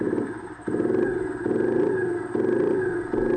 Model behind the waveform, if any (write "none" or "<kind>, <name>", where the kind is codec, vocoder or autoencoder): none